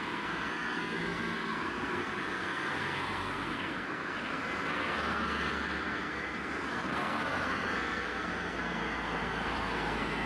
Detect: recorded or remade remade